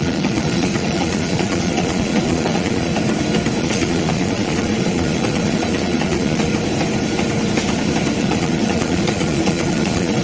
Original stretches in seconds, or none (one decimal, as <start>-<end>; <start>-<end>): 2.9-3.6; 6.5-8.2